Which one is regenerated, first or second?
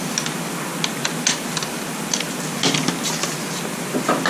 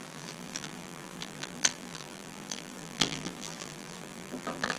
second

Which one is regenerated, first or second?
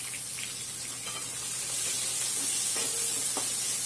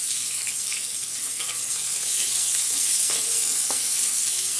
second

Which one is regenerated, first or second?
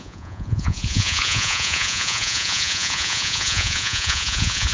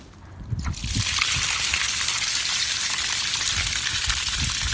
first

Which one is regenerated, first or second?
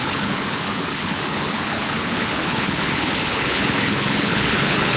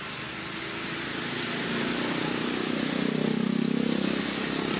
first